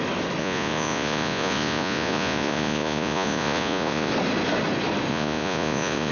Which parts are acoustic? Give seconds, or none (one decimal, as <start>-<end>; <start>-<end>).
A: 0.0-0.4; 4.1-5.1